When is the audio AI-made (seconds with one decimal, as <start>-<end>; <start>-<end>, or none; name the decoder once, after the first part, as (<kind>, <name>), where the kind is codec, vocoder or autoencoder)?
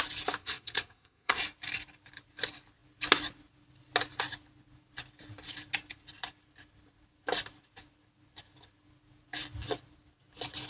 0.4-1.4 (codec, SNAC)